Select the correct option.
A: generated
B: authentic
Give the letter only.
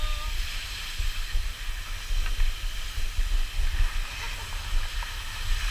B